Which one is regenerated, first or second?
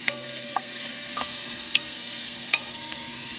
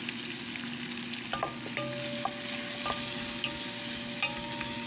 first